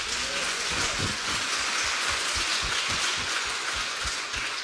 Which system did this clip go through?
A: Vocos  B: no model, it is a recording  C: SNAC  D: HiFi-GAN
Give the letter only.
A